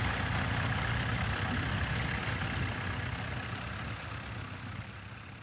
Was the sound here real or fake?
real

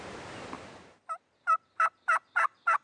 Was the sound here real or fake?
fake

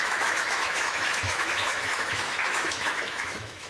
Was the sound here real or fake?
fake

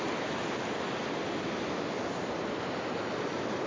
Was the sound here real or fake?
real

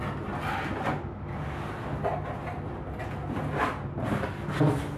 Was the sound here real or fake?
real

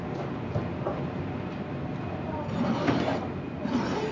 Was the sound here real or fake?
real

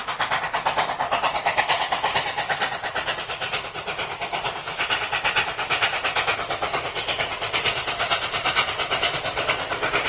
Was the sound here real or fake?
real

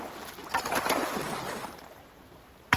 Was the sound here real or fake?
real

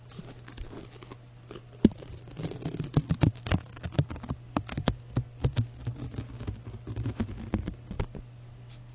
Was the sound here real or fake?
real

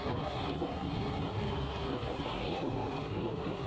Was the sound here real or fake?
fake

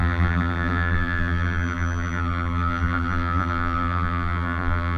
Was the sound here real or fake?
fake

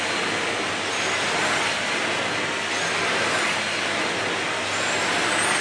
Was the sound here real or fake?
real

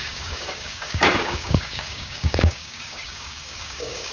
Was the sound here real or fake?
fake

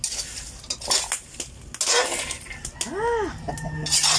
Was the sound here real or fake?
real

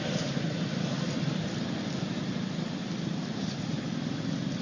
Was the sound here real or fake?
real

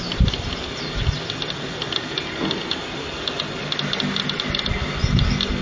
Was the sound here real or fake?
real